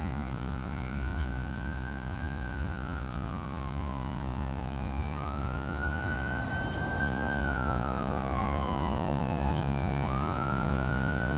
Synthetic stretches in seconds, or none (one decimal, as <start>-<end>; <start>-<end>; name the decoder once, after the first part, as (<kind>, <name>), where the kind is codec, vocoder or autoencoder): 0.0-6.4 (vocoder, Vocos); 7.0-11.4